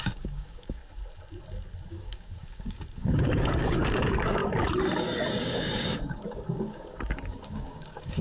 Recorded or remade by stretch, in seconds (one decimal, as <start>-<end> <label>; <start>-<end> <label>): 0.0-0.8 remade; 0.8-1.9 recorded; 1.9-4.4 remade; 4.4-5.4 recorded; 5.4-8.2 remade